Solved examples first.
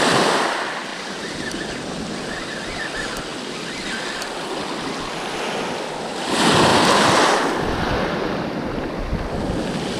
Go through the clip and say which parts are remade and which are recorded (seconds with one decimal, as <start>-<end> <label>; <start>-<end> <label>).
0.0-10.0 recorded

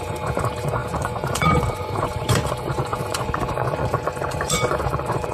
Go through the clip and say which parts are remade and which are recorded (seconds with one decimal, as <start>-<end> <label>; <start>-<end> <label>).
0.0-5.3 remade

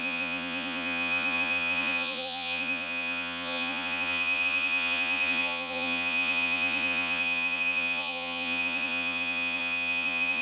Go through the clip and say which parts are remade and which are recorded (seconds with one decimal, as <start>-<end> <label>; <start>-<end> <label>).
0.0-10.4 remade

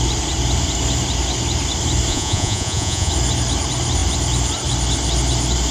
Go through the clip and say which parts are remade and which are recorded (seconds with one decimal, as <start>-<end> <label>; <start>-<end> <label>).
0.0-2.1 recorded; 2.1-3.1 remade; 3.1-5.7 recorded

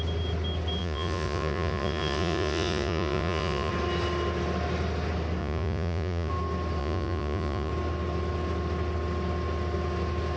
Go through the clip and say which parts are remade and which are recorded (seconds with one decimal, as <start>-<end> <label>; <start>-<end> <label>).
0.0-0.8 recorded; 0.8-3.7 remade; 3.7-5.4 recorded; 5.4-6.3 remade; 6.3-6.8 recorded; 6.8-7.7 remade; 7.7-10.4 recorded

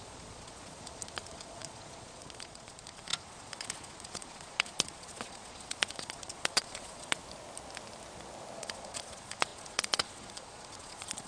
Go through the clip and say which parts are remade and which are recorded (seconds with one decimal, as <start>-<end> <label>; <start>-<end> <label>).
0.0-7.2 remade; 7.2-8.6 recorded; 8.6-11.3 remade

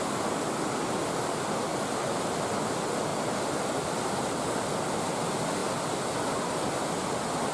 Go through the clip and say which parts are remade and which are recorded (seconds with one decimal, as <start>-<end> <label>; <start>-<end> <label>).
0.0-7.5 recorded

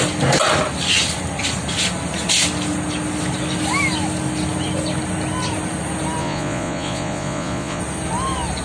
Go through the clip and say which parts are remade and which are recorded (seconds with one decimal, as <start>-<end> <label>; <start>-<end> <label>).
0.0-6.2 recorded; 6.2-7.8 remade; 7.8-8.6 recorded